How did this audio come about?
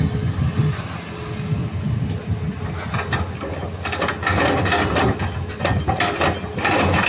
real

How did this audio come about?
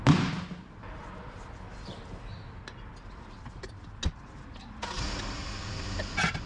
real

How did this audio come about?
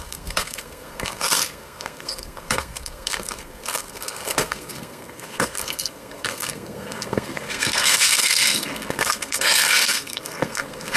fake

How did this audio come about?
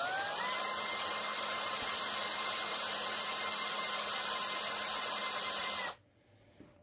real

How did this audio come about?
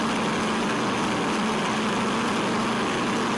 real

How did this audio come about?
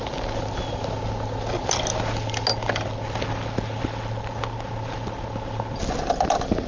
real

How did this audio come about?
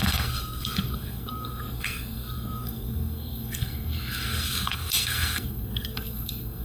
fake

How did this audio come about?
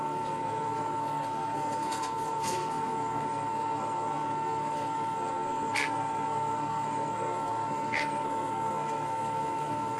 fake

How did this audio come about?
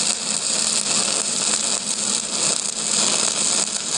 real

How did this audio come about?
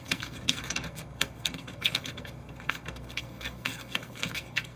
fake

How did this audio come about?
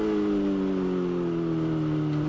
real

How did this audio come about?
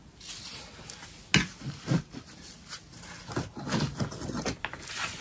real